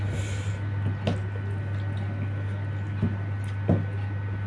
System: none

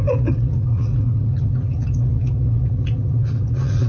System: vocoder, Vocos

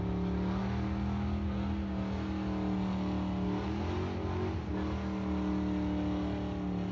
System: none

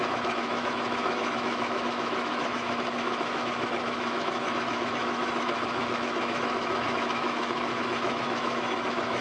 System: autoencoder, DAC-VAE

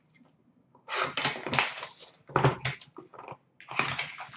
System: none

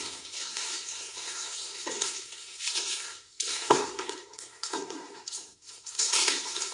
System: codec, SNAC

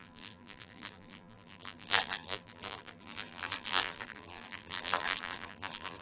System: vocoder, BigVGAN v2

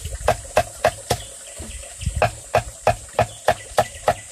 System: none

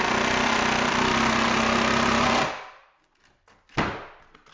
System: none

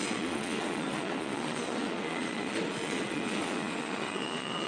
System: vocoder, Vocos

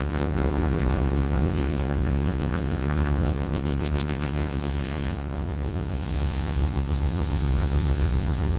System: vocoder, Vocos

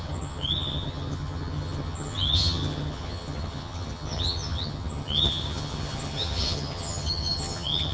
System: vocoder, HiFi-GAN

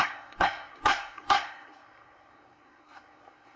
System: codec, SNAC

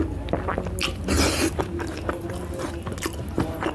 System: none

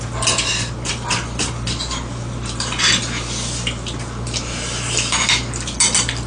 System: none